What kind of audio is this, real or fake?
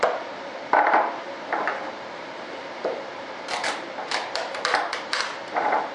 fake